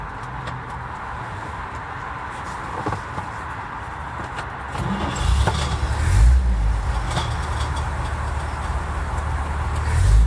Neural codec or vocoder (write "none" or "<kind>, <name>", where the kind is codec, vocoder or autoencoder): none